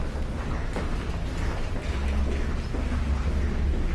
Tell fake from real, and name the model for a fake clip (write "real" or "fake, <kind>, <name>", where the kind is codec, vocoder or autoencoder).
real